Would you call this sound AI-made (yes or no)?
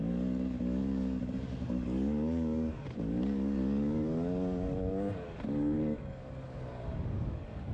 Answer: yes